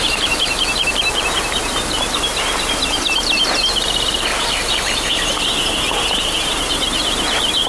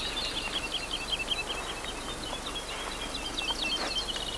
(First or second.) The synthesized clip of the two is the first